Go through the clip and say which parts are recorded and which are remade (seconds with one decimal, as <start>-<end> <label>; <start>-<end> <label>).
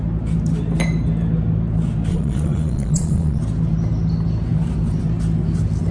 0.0-2.1 recorded; 2.1-3.4 remade; 3.4-5.9 recorded